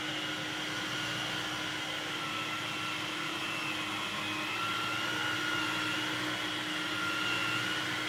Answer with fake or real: real